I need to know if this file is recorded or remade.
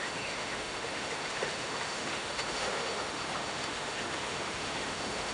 remade